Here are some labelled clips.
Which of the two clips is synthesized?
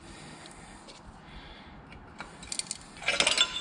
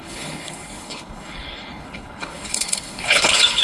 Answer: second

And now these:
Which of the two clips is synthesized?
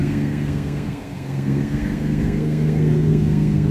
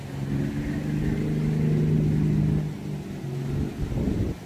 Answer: first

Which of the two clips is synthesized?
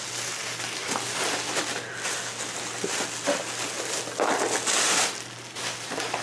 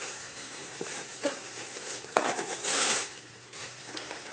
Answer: second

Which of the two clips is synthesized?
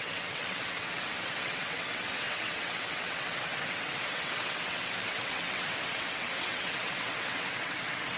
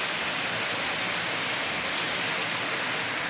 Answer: first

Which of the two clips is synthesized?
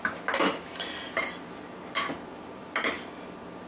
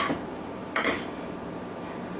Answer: second